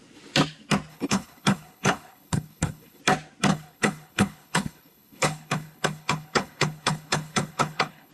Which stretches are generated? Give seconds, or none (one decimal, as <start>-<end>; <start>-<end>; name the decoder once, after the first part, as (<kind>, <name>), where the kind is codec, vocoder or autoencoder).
0.9-3.0 (codec, HILCodec); 3.5-8.1